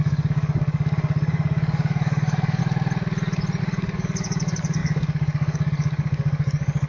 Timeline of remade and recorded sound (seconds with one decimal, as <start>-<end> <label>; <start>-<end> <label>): 0.0-2.6 remade; 2.6-3.6 recorded; 3.6-6.9 remade

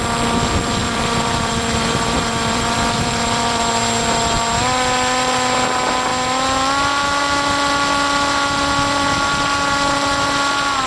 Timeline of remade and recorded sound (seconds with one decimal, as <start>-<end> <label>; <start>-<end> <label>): 0.0-0.8 recorded; 0.8-3.6 remade; 3.6-10.9 recorded